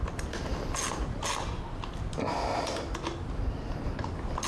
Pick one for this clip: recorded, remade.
recorded